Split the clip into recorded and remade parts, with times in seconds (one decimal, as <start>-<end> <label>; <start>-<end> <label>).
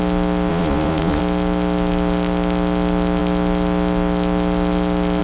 0.0-0.5 recorded; 0.5-1.2 remade; 1.2-5.2 recorded